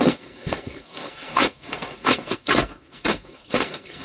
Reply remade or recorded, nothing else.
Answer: remade